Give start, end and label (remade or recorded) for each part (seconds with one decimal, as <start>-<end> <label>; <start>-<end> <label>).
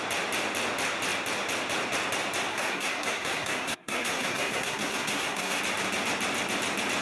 0.0-2.5 recorded; 2.5-5.6 remade; 5.6-7.0 recorded